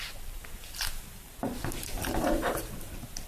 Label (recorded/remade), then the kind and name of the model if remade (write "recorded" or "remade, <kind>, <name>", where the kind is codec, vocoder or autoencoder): recorded